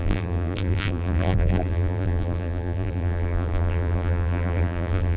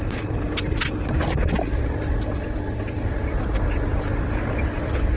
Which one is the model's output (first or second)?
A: first